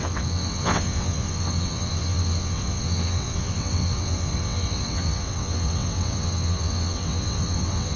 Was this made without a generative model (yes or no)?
no